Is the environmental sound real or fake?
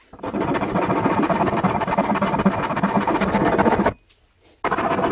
real